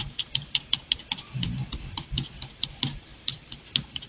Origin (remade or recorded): recorded